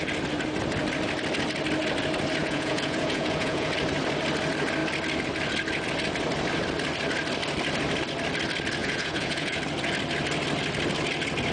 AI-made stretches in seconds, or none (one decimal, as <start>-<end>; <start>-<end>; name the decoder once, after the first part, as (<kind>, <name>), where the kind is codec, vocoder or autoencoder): 2.4-3.7 (vocoder, Vocos); 8.8-9.6